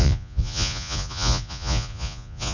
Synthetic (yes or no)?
yes